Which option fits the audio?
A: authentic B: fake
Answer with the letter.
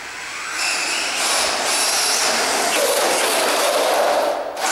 A